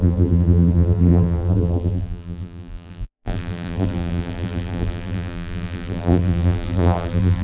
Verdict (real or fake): fake